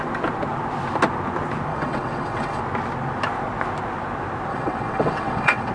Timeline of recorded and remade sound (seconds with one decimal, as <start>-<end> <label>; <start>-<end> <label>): 0.0-1.7 recorded; 1.7-2.6 remade; 2.6-4.5 recorded; 4.5-5.7 remade